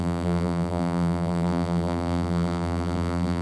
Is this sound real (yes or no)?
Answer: no